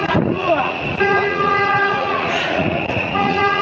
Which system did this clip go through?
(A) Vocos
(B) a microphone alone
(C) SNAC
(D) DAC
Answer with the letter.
A